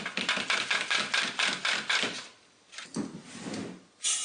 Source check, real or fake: real